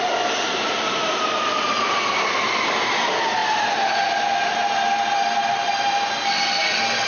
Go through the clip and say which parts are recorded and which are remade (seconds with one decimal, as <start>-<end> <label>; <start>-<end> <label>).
0.0-7.1 recorded